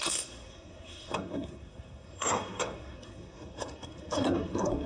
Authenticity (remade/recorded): remade